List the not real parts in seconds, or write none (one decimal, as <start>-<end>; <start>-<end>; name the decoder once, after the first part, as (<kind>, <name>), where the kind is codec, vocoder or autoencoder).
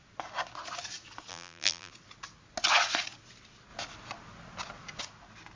1.3-1.9 (vocoder, BigVGAN v2)